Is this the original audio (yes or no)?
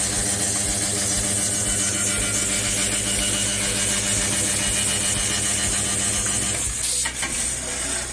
yes